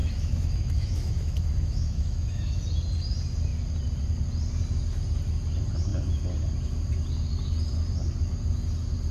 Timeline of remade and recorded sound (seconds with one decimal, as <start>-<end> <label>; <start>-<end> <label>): 0.0-2.6 remade; 2.6-9.1 recorded